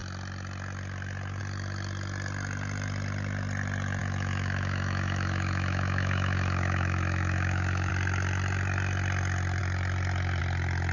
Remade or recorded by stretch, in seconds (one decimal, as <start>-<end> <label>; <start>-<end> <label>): 0.0-4.0 recorded; 4.0-7.9 remade; 7.9-10.9 recorded